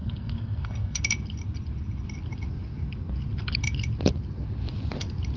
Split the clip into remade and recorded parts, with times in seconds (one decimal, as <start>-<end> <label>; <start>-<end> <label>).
0.0-1.0 remade; 1.0-5.4 recorded